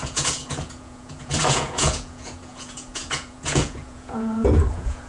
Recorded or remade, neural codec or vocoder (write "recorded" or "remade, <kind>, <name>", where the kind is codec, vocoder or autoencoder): remade, vocoder, Vocos